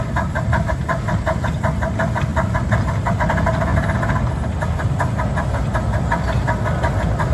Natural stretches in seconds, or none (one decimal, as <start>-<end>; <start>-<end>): 0.0-7.3